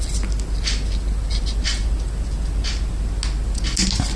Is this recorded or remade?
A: recorded